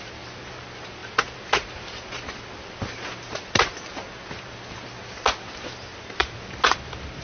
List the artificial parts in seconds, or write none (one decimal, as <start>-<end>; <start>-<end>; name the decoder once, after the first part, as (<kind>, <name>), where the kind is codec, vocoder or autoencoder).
none